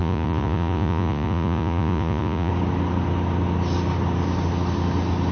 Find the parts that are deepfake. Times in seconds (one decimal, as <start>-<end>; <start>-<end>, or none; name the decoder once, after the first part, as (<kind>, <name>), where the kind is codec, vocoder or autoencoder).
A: 0.0-2.5 (vocoder, Vocos)